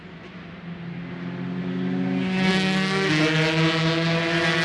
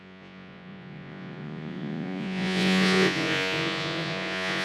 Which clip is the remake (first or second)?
second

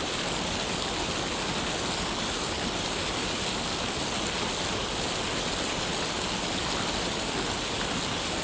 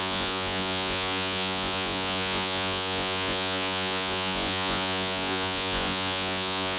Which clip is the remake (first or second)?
second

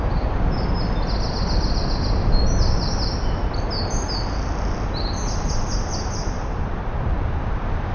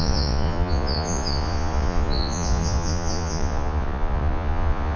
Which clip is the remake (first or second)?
second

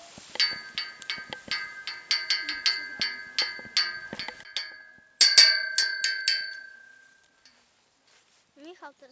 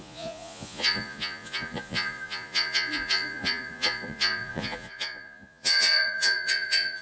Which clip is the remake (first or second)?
second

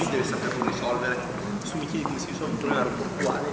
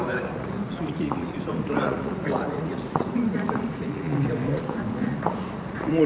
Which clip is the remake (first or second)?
second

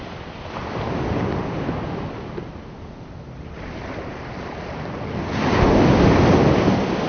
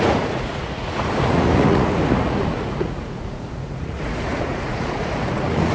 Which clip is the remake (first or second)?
second